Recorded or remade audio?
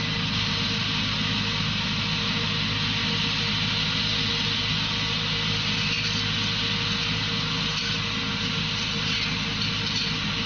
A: recorded